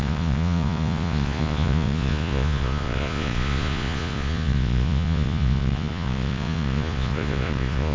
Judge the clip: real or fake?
fake